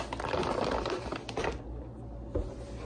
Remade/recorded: recorded